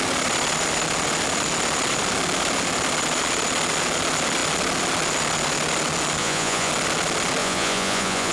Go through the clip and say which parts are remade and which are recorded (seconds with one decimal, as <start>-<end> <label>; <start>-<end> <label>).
0.0-6.2 recorded; 6.2-6.7 remade; 6.7-7.4 recorded; 7.4-8.3 remade